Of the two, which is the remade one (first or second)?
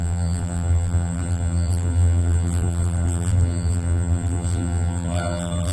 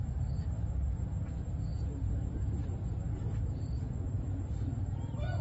first